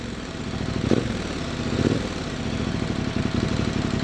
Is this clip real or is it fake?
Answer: real